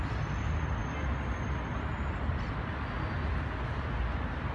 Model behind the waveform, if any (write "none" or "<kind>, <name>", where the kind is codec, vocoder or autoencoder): none